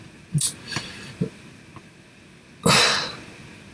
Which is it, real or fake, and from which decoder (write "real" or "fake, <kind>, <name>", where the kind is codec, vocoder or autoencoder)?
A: real